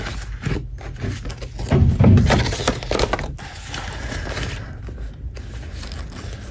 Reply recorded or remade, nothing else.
recorded